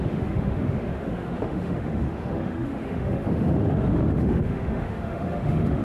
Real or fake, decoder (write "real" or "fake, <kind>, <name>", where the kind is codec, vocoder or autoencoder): fake, autoencoder, DAC-VAE